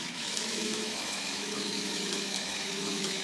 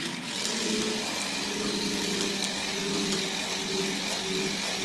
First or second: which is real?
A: second